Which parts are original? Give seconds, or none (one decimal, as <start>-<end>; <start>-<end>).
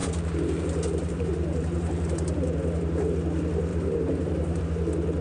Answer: 3.1-3.7; 4.6-5.2